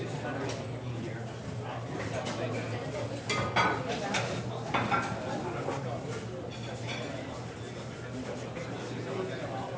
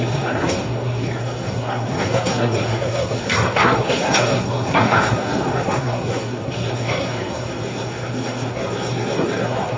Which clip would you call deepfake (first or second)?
second